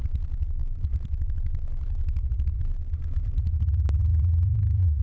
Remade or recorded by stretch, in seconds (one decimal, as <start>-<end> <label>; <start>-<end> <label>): 0.0-5.0 remade